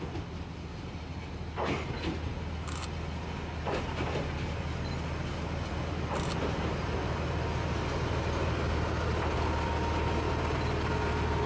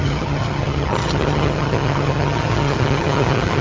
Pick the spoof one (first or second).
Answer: second